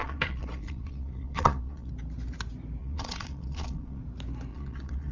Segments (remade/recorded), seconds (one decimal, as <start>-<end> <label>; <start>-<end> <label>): 0.0-1.9 remade; 1.9-2.8 recorded; 2.8-4.0 remade; 4.0-4.5 recorded; 4.5-5.1 remade